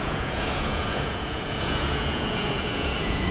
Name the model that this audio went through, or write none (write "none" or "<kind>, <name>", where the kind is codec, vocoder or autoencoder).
vocoder, Vocos